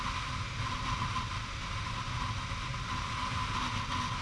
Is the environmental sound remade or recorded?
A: recorded